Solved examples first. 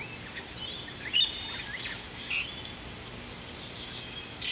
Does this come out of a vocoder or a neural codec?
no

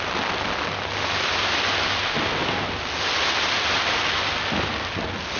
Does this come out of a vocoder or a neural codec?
no